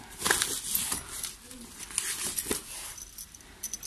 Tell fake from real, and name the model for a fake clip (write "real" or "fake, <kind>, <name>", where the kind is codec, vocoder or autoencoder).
real